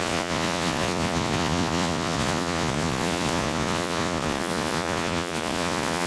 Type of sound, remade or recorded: remade